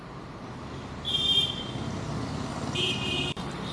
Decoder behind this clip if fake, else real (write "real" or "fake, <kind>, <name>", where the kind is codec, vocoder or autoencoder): real